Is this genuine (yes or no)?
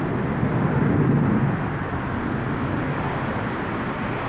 yes